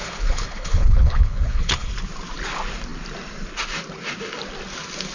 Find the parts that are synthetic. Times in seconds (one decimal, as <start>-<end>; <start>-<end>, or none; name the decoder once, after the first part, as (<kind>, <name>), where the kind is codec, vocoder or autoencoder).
0.0-1.9 (codec, HILCodec)